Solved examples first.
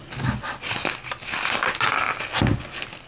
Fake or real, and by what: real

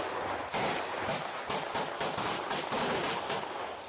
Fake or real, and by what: real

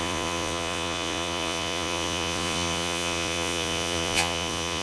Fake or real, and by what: fake, vocoder, Vocos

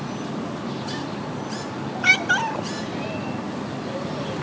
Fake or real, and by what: real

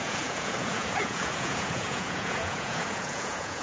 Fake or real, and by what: fake, vocoder, Vocos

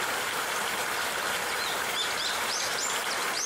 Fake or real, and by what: real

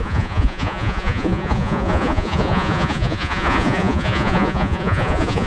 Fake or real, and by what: fake, vocoder, Vocos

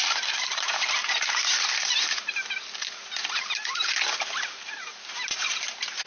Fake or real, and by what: real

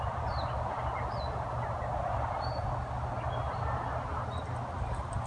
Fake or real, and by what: real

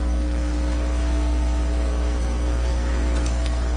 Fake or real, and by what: fake, codec, SNAC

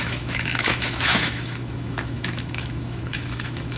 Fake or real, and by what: fake, autoencoder, DAC-VAE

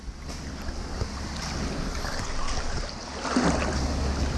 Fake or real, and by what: real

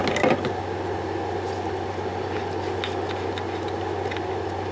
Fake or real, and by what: real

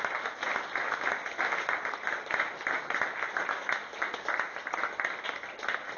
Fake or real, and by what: real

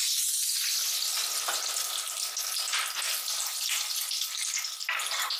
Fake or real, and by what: real